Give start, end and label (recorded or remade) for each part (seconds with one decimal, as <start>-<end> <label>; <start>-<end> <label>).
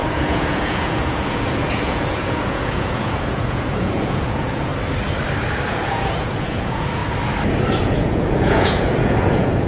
0.0-4.7 remade; 4.7-5.7 recorded; 5.7-7.0 remade; 7.0-7.8 recorded; 7.8-9.7 remade